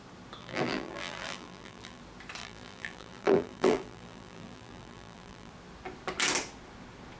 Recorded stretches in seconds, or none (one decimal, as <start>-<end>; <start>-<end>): 0.0-0.4; 2.0-2.4; 5.5-7.2